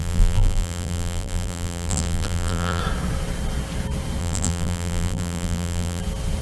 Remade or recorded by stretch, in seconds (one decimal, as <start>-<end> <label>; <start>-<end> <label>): 0.0-2.8 remade; 2.8-4.2 recorded; 4.2-6.0 remade; 6.0-6.4 recorded